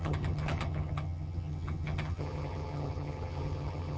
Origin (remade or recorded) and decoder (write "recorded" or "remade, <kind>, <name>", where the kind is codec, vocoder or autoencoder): remade, vocoder, HiFi-GAN